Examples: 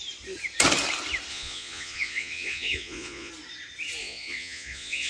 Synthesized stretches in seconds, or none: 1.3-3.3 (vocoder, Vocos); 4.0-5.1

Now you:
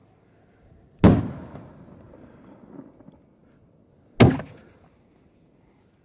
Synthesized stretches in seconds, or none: none

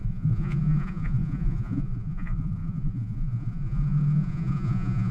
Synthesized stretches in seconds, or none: 0.0-5.1 (vocoder, Vocos)

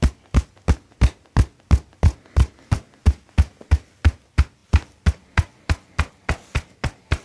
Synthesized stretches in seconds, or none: none

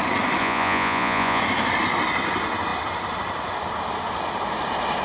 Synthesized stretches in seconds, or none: 0.4-1.4 (vocoder, Vocos)

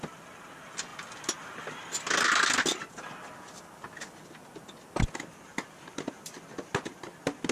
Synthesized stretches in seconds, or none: none

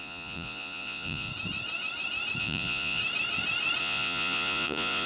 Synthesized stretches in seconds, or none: 0.0-1.3 (vocoder, Vocos); 2.4-3.0; 3.8-5.1

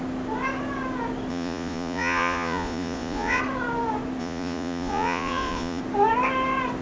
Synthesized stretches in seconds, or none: 1.3-3.4 (vocoder, Vocos); 4.2-5.8